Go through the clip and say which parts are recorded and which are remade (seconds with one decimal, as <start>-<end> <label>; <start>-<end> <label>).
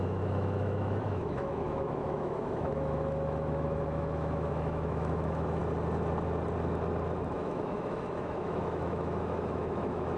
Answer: 0.0-5.6 remade; 5.6-7.3 recorded; 7.3-10.2 remade